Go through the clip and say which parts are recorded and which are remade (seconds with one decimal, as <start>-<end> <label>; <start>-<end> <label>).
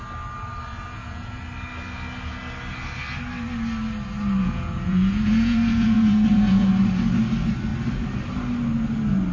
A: 0.0-0.7 recorded; 0.7-1.4 remade; 1.4-4.4 recorded; 4.4-6.7 remade; 6.7-9.3 recorded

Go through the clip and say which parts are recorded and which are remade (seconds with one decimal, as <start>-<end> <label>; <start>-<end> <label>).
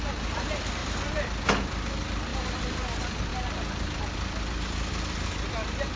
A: 0.0-6.0 recorded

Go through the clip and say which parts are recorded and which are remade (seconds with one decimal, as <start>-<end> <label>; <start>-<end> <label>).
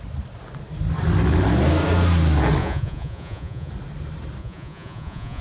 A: 0.0-2.6 recorded; 2.6-3.7 remade; 3.7-4.4 recorded; 4.4-5.4 remade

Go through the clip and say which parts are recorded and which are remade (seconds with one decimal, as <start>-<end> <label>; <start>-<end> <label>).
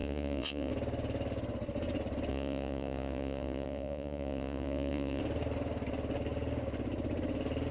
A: 0.0-0.7 remade; 0.7-2.3 recorded; 2.3-5.2 remade; 5.2-7.7 recorded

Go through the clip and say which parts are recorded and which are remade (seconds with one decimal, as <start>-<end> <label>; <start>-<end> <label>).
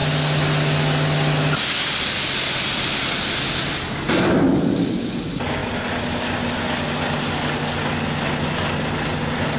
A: 0.0-9.6 recorded